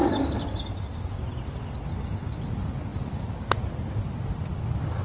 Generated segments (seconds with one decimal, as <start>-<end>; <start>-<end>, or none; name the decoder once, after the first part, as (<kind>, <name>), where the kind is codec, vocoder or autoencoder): 1.9-2.4 (codec, DAC)